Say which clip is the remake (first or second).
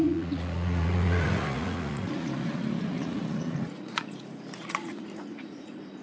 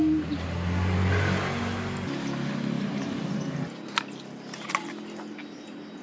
first